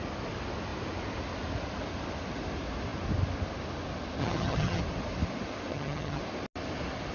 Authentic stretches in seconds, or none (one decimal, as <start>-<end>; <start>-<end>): 0.0-4.2; 4.8-5.7; 6.2-7.1